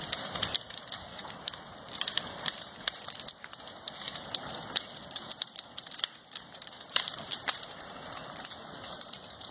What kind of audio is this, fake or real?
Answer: fake